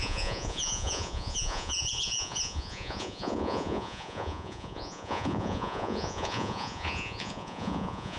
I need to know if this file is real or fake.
fake